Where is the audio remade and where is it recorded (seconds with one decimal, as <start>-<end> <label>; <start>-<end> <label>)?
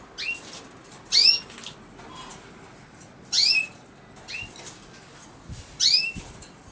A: 0.0-6.7 recorded